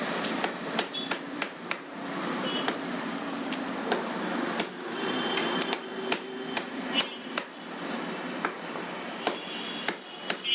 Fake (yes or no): yes